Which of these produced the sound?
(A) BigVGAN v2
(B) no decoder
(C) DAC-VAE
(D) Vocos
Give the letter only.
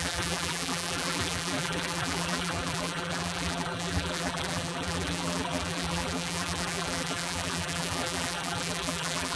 A